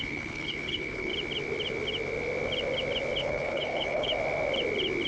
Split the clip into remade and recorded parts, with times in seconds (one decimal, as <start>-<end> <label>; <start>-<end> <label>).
0.0-1.1 remade; 1.1-3.2 recorded; 3.2-4.1 remade; 4.1-5.1 recorded